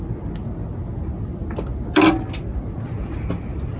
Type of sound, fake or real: real